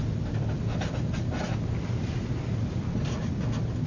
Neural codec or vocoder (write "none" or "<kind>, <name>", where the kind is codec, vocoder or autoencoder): none